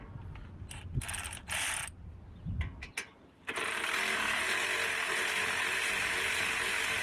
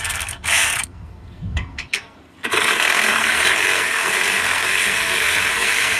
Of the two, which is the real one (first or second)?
first